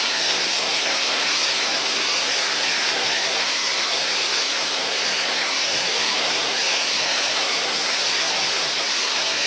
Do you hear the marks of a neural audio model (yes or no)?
yes